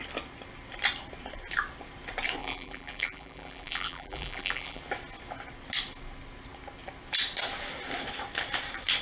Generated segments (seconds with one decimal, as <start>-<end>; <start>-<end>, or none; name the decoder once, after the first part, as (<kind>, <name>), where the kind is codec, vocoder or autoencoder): 2.4-4.8 (vocoder, BigVGAN v2)